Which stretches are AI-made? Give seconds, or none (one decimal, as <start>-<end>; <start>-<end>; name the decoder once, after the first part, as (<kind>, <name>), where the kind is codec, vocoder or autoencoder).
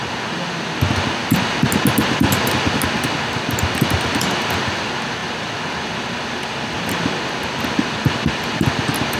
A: none